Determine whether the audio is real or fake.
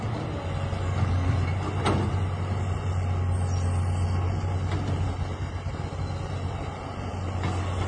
real